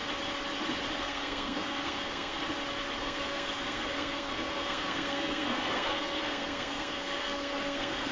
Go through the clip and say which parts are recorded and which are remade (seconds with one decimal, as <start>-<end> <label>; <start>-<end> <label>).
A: 0.0-1.0 recorded; 1.0-2.4 remade; 2.4-3.0 recorded; 3.0-8.1 remade